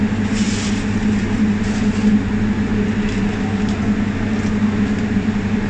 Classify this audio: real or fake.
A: real